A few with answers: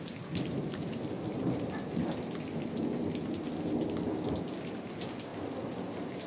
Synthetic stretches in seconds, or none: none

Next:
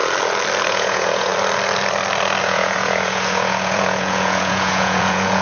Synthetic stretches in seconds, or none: 0.7-1.3 (vocoder, Vocos); 2.4-5.4

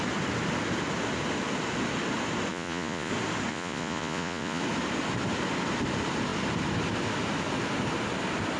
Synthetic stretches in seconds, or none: 2.5-3.1 (vocoder, Vocos); 3.5-4.6

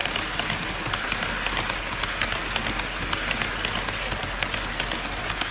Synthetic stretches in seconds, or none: none

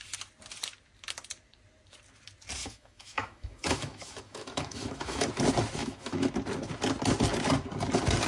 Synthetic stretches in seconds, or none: 2.6-5.3 (autoencoder, DAC-VAE); 5.8-6.3

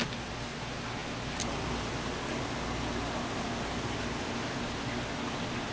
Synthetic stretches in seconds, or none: none

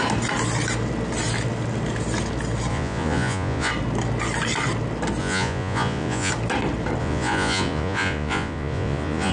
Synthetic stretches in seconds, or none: 2.7-3.7 (vocoder, Vocos); 5.2-6.3; 7.0-9.3

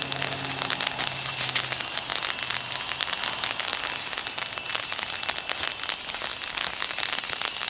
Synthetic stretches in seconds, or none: none